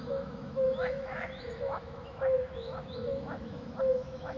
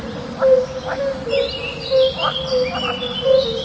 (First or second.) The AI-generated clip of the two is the first